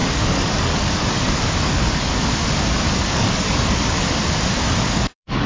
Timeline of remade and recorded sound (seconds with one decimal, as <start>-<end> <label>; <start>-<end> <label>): 0.0-2.1 remade; 2.1-3.1 recorded; 3.1-4.2 remade; 4.2-4.8 recorded; 4.8-5.5 remade